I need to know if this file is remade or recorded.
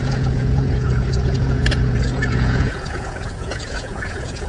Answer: remade